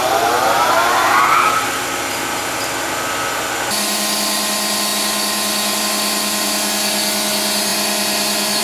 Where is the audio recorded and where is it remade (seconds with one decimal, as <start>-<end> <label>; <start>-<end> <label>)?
0.0-8.6 recorded